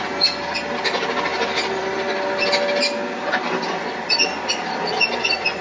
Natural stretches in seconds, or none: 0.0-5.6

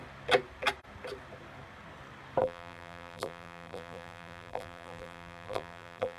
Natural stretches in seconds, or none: 0.0-2.4

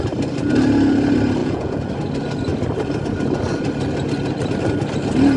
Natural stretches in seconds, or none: 0.0-1.4; 1.9-5.4

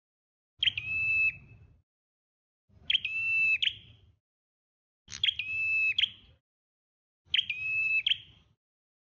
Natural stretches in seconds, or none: 0.0-9.0

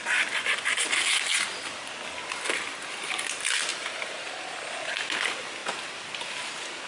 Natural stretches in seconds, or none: 0.0-3.7; 4.3-6.9

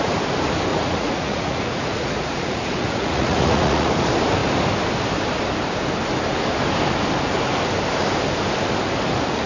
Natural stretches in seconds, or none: 0.0-0.7; 3.9-9.5

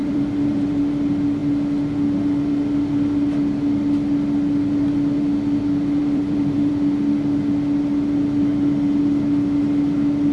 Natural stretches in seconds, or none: 0.8-6.0; 6.7-10.3